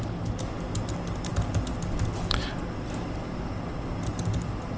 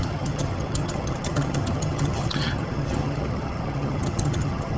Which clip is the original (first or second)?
first